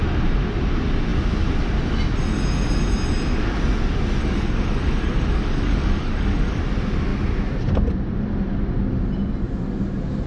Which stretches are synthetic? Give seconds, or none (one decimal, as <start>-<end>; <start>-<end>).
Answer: 4.2-6.6